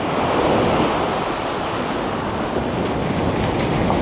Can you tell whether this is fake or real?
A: real